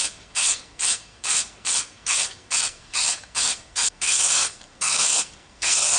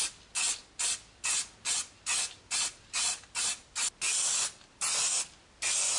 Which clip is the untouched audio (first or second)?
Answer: second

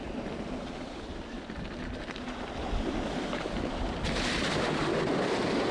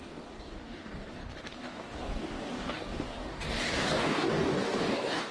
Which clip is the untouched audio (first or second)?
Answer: first